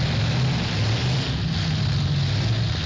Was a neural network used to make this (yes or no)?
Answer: no